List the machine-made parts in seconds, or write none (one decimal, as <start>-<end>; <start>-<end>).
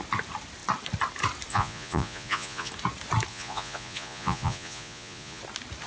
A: 1.5-2.7; 3.3-5.4